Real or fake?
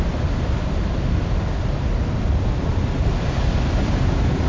real